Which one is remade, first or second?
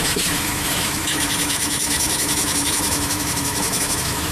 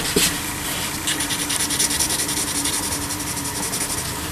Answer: first